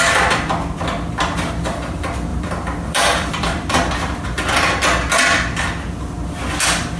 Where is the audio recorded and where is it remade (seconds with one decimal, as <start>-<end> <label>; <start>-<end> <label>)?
0.0-2.3 recorded; 2.3-3.9 remade; 3.9-7.0 recorded